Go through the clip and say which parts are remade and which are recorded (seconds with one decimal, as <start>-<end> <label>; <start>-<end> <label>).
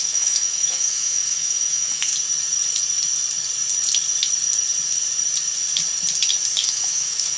0.0-2.1 remade; 2.1-6.5 recorded; 6.5-7.4 remade